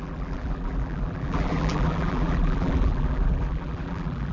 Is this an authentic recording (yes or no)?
no